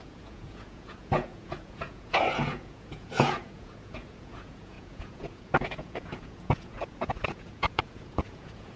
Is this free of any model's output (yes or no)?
no